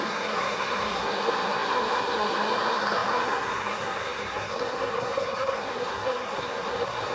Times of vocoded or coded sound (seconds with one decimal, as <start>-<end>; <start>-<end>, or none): 0.0-7.1